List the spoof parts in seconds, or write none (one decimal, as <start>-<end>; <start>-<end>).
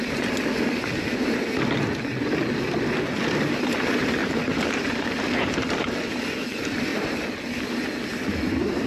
4.2-5.2